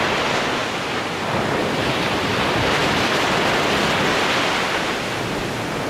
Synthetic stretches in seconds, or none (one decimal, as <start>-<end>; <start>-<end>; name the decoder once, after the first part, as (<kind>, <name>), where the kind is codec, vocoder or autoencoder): none